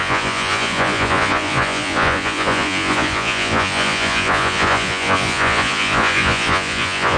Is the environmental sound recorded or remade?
remade